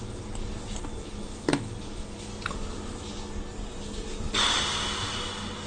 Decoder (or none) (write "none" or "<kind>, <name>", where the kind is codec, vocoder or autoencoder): none